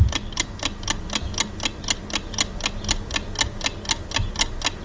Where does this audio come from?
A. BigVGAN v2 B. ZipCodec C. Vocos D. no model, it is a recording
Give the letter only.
D